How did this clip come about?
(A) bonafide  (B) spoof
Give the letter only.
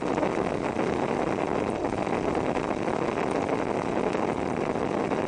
A